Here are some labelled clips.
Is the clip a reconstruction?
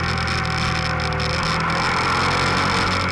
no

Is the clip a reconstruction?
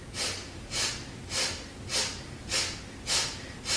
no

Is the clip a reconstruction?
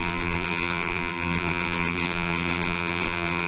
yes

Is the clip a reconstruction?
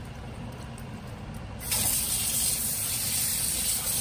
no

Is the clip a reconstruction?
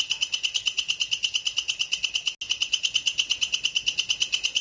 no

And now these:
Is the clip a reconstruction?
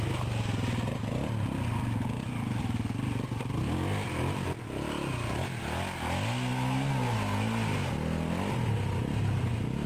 no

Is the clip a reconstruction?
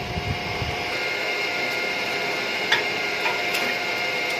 yes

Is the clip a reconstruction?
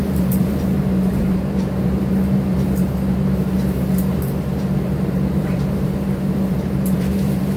yes